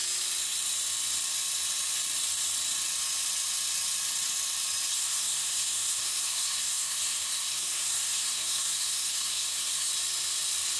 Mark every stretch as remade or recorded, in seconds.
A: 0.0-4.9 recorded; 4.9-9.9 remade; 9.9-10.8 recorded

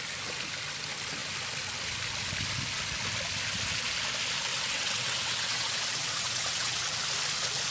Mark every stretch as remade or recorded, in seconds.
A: 0.0-4.5 recorded; 4.5-7.0 remade; 7.0-7.7 recorded

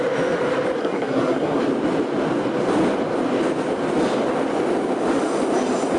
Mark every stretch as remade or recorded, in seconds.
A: 0.0-0.8 recorded; 0.8-1.6 remade; 1.6-6.0 recorded

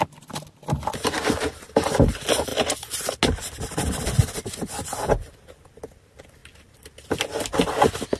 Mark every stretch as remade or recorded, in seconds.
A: 0.0-8.2 recorded

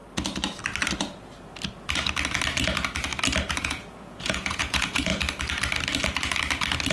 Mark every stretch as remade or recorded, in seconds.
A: 0.0-3.6 recorded; 3.6-5.1 remade; 5.1-6.9 recorded

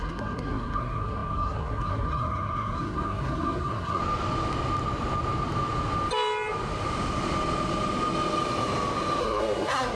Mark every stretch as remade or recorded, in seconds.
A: 0.0-4.0 remade; 4.0-9.2 recorded; 9.2-10.0 remade